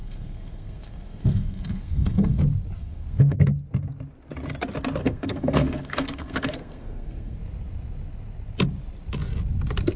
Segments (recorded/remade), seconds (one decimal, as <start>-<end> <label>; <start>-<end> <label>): 0.0-2.4 remade; 2.4-2.8 recorded; 2.8-3.4 remade; 3.4-5.0 recorded; 5.0-7.4 remade; 7.4-10.0 recorded